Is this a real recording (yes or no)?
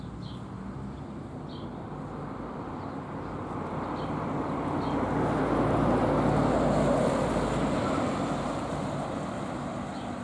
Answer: yes